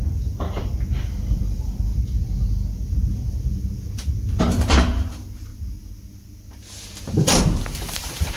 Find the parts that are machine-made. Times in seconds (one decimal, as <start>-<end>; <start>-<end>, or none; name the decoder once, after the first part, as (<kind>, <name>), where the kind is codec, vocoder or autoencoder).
0.0-1.9 (vocoder, BigVGAN v2); 4.4-5.5; 7.0-8.4